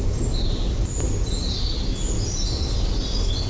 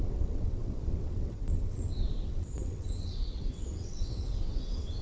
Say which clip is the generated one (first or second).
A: second